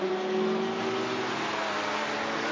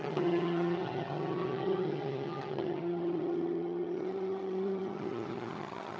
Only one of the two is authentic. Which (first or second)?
first